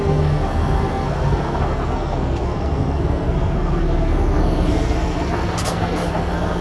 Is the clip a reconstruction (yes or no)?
yes